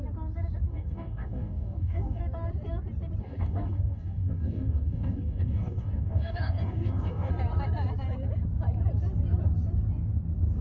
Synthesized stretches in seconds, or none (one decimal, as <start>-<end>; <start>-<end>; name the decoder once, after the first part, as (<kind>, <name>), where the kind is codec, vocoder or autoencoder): 0.7-2.2 (codec, DAC); 3.2-7.3